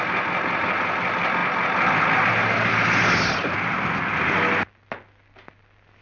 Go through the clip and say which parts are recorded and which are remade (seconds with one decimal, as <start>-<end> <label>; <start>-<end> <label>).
0.0-6.0 recorded